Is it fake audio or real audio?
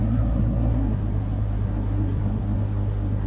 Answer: fake